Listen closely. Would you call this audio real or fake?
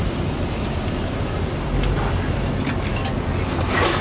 real